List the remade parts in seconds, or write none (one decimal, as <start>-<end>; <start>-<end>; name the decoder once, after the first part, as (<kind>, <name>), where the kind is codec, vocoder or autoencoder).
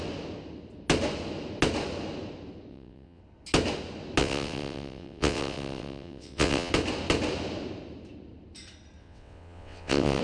2.7-3.2 (vocoder, WaveNeXt); 4.2-6.7; 9.0-10.2